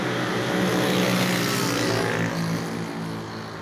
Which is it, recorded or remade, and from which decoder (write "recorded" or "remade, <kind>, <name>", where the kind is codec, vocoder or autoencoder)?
recorded